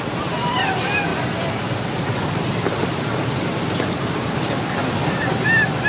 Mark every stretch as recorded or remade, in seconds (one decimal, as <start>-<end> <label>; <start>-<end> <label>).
0.0-5.9 remade